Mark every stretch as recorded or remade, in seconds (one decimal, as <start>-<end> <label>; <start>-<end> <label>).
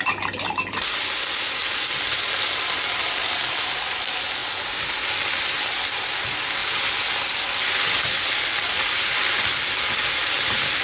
0.0-10.8 recorded